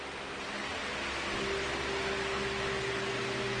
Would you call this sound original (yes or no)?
yes